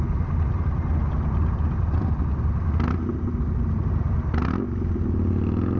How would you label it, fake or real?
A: real